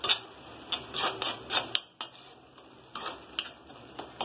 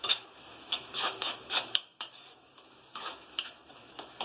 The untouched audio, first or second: first